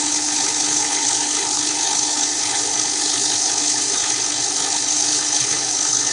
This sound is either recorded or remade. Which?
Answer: remade